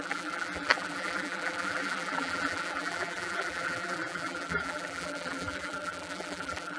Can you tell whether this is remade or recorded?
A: remade